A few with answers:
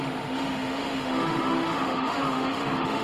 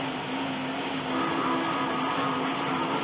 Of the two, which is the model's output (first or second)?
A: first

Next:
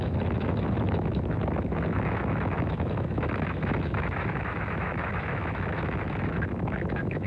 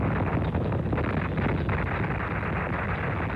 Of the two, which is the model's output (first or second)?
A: first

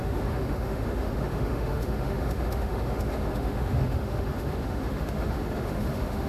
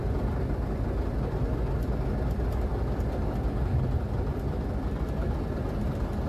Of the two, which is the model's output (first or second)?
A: first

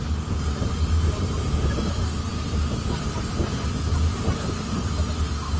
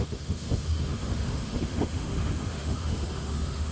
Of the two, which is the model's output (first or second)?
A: second